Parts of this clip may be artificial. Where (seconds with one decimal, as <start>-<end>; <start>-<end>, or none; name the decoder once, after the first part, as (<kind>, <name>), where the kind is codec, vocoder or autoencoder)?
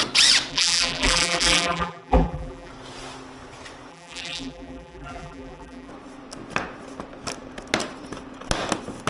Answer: 0.5-2.7 (vocoder, BigVGAN v2); 3.9-5.9